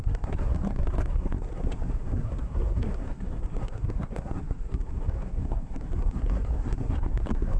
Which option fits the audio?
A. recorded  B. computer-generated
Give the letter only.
B